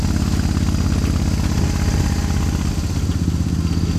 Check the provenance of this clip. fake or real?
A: real